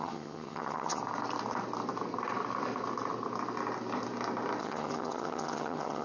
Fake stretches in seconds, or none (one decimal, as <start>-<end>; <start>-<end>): 0.0-1.0; 4.6-6.0